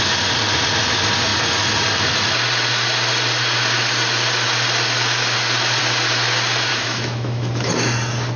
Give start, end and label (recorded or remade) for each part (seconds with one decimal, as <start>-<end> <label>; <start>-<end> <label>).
0.0-6.7 recorded; 6.7-7.7 remade; 7.7-8.4 recorded